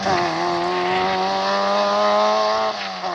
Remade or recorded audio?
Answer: recorded